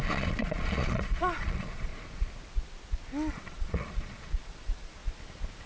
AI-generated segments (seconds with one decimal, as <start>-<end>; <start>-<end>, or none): 0.0-1.9; 3.3-5.0